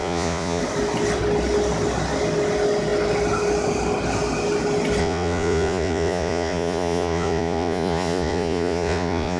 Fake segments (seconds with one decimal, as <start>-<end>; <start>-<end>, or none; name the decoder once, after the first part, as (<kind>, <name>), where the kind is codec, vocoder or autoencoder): 0.0-0.6 (vocoder, Vocos); 5.0-9.4

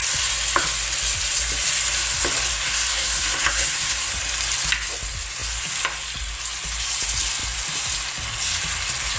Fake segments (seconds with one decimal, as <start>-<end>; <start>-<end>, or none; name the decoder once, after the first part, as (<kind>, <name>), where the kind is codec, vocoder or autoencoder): 2.5-4.1 (codec, SNAC)